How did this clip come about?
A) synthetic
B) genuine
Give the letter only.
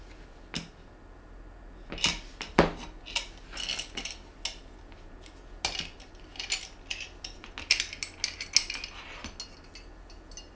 B